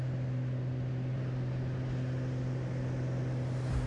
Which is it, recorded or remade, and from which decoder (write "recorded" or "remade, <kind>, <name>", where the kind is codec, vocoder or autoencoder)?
recorded